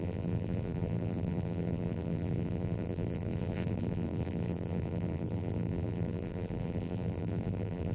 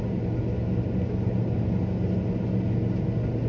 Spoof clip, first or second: first